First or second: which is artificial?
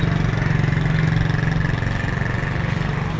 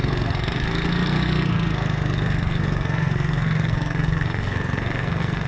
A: second